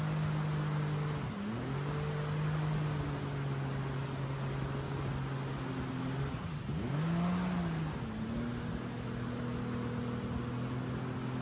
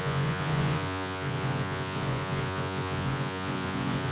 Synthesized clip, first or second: second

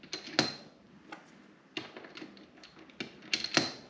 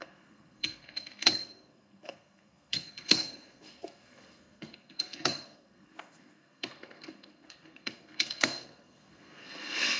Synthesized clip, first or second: second